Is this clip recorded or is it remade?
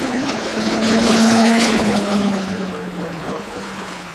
remade